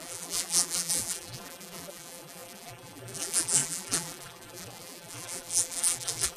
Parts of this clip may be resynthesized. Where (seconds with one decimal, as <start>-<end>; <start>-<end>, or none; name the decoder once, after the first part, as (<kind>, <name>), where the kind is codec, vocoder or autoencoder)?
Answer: 0.0-6.4 (vocoder, BigVGAN v2)